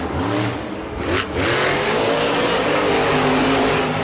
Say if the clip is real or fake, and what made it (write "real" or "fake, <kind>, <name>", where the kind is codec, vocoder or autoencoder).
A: fake, codec, DAC